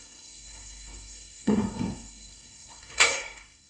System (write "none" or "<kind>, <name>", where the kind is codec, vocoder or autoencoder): codec, SNAC